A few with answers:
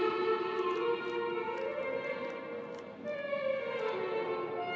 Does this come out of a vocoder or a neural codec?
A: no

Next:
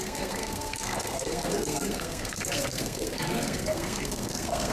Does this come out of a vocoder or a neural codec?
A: yes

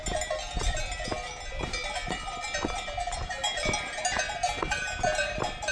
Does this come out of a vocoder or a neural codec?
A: no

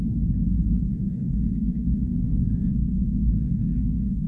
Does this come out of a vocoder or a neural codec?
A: yes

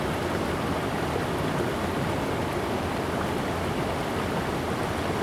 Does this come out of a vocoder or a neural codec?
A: no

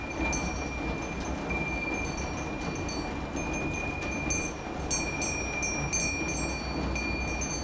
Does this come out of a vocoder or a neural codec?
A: no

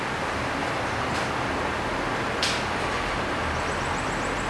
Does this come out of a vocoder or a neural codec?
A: no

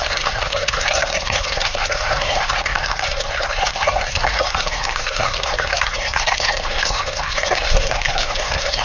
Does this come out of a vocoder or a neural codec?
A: yes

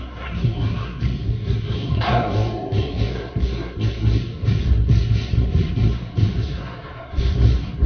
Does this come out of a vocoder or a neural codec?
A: yes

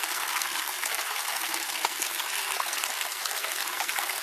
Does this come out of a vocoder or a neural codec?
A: yes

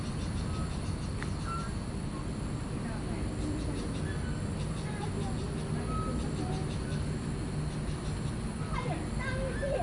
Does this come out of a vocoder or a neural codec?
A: no